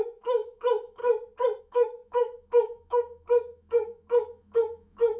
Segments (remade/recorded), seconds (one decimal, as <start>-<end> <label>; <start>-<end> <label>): 0.0-1.0 remade; 1.0-1.6 recorded; 1.6-5.2 remade